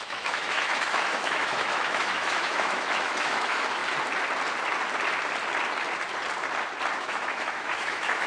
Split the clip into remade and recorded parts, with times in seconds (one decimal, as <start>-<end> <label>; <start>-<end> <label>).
0.0-3.8 remade; 3.8-7.0 recorded; 7.0-8.3 remade